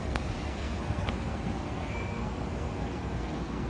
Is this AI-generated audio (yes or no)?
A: yes